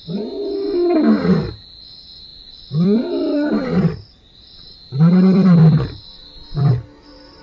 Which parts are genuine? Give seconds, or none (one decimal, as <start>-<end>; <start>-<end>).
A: 0.0-2.3; 6.7-7.4